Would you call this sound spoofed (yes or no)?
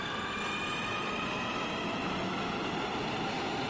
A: no